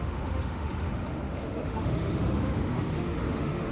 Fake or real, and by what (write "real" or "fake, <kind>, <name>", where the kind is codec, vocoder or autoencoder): fake, autoencoder, DAC-VAE